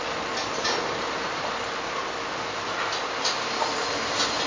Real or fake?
real